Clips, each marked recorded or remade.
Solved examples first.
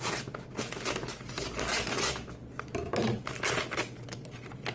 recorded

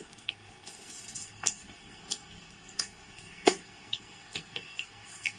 remade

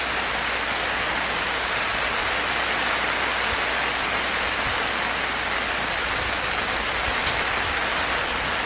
recorded